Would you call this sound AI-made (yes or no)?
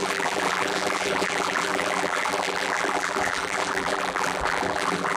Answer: yes